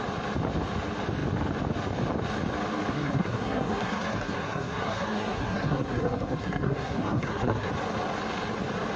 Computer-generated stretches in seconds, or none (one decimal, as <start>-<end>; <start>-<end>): 2.9-7.7